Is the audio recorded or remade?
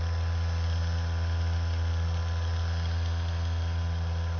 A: recorded